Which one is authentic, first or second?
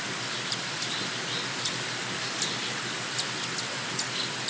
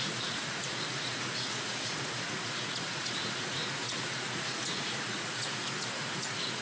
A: first